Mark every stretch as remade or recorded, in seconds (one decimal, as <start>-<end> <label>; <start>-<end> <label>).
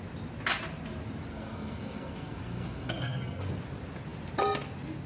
0.0-1.3 recorded; 1.3-3.5 remade; 3.5-5.1 recorded